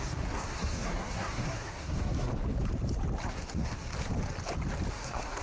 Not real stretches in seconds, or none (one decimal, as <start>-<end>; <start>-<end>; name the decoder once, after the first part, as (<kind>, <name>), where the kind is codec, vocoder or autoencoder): 0.0-2.3 (codec, SNAC); 3.3-3.9; 4.9-5.4